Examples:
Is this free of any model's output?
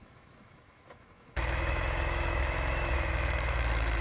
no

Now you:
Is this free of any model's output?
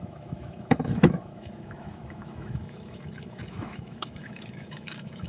no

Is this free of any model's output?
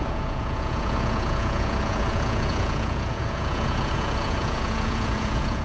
no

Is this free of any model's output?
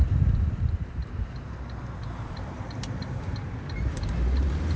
no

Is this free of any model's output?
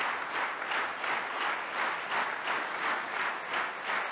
yes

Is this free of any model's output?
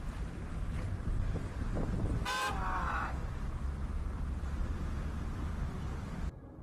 no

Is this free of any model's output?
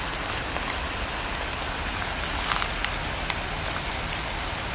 yes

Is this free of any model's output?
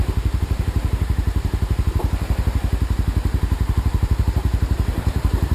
no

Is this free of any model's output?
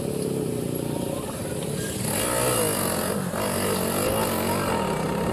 yes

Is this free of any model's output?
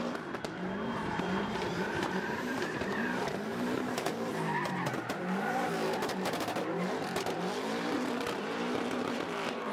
no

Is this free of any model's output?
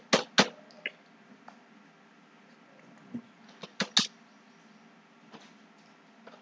yes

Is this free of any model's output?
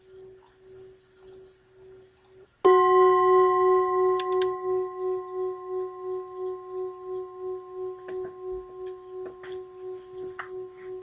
yes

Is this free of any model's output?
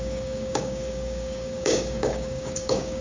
no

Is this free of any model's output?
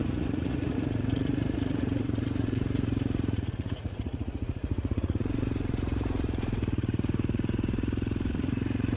no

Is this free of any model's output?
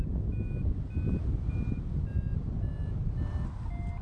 yes